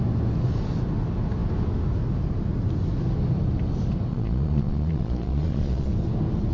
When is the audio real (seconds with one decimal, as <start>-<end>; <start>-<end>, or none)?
0.0-4.1; 5.9-6.5